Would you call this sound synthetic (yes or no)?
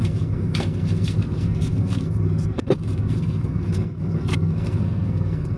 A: yes